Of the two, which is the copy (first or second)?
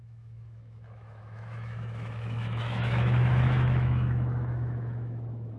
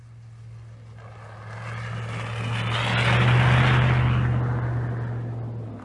first